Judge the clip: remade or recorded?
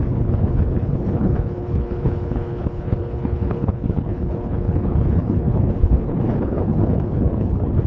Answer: remade